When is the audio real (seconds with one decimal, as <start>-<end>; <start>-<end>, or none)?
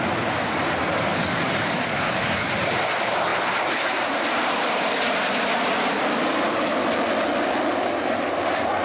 0.0-1.1; 2.5-8.8